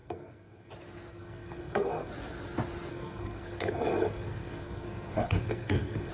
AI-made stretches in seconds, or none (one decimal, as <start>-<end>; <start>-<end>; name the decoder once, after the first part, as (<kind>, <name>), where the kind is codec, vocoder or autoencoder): 0.0-0.7 (codec, SNAC); 1.1-2.1; 2.9-6.1